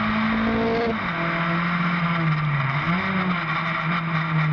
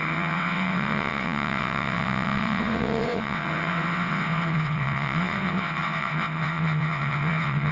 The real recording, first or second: first